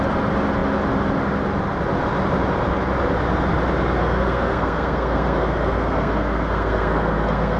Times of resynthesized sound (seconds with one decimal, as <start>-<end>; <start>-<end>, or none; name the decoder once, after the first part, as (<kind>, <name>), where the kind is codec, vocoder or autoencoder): 4.0-7.6 (codec, SNAC)